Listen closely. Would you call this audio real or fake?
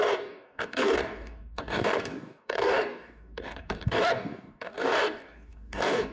fake